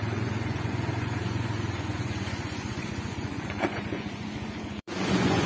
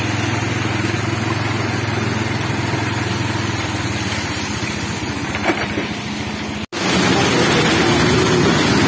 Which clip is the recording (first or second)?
second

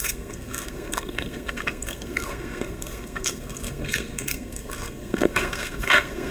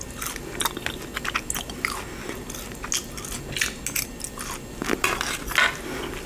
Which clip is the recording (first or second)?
second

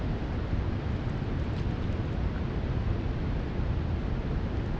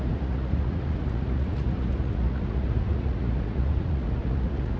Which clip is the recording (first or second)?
first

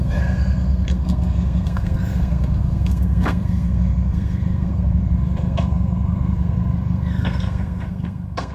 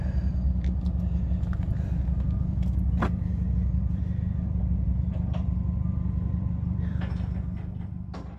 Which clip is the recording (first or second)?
second